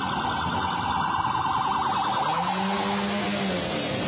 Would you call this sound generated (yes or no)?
no